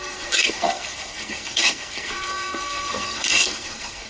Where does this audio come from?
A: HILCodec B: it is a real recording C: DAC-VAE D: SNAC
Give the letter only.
D